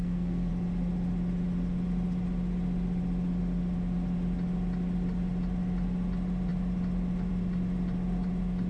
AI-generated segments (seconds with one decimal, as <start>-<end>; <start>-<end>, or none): 0.0-0.5